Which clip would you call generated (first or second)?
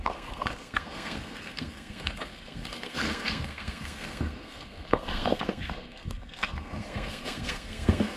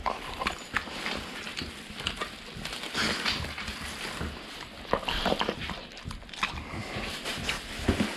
first